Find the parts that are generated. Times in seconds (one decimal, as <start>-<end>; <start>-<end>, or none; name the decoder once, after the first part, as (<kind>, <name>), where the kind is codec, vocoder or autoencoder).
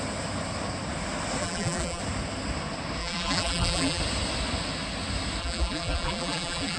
1.4-2.0 (vocoder, BigVGAN v2); 3.0-4.0; 5.4-6.8